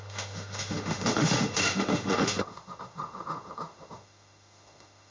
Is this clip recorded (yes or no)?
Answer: no